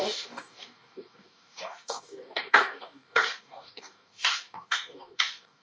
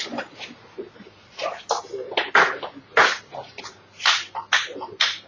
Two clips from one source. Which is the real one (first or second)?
second